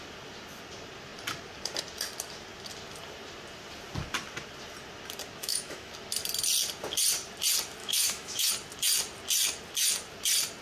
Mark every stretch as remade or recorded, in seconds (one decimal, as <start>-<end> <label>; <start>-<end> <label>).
0.0-5.4 recorded; 5.4-5.9 remade; 5.9-7.8 recorded; 7.8-8.5 remade; 8.5-10.6 recorded